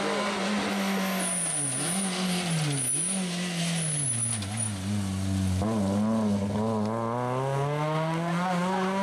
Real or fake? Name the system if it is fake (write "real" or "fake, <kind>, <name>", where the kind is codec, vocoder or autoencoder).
real